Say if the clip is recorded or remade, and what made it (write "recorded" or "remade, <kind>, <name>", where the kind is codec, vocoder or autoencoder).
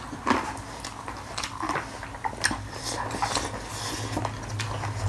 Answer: recorded